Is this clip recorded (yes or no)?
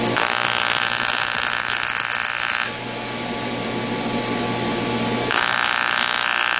yes